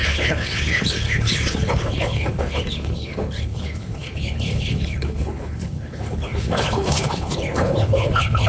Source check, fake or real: fake